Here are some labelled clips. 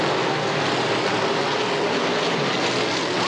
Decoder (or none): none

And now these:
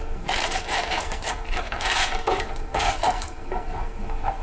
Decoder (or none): codec, SNAC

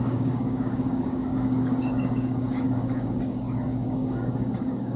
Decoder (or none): codec, DAC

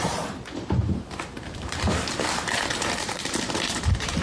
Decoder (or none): vocoder, BigVGAN v2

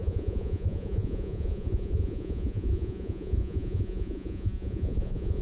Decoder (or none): vocoder, Vocos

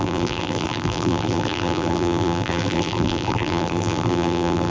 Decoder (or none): vocoder, BigVGAN v2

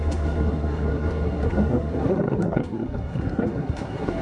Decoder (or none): codec, SNAC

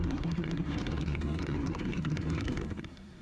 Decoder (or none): codec, SNAC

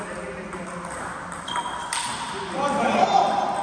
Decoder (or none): none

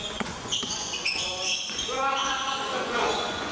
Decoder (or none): vocoder, Vocos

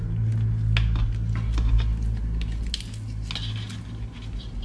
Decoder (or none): none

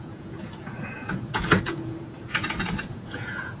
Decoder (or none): vocoder, Vocos